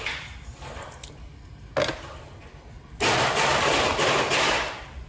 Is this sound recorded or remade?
recorded